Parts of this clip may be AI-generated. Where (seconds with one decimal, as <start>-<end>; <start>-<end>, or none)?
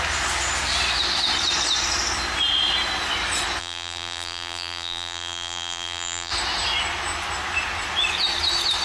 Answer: 3.6-6.3